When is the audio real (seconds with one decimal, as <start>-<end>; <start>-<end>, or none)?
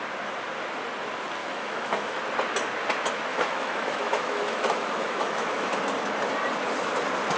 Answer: 0.0-1.4; 2.2-3.3; 5.8-7.4